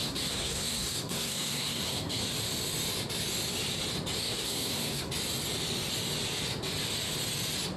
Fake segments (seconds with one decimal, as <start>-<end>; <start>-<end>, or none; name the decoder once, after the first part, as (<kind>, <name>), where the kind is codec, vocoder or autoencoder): 0.0-2.2 (codec, SNAC); 4.2-5.1